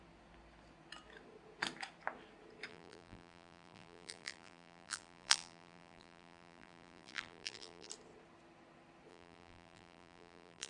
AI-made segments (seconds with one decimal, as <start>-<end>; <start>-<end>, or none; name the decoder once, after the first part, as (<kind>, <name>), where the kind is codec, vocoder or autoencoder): 2.7-7.9 (vocoder, BigVGAN v2); 9.1-10.7